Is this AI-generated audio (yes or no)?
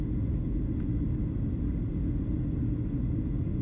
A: no